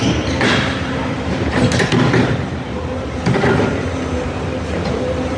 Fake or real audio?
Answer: fake